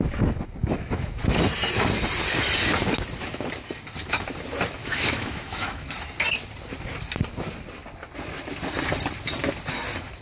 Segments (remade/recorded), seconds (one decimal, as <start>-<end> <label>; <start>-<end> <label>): 0.0-0.6 recorded; 0.6-1.2 remade; 1.2-4.8 recorded; 4.8-5.9 remade; 5.9-10.2 recorded